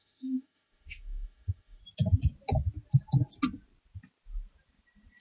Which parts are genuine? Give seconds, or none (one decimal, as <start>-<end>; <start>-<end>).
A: 1.8-5.2